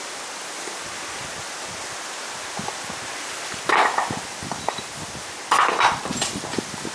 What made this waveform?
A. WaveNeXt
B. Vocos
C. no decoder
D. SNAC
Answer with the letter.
C